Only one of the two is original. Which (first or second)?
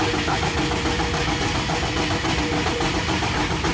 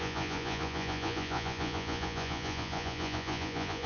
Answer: first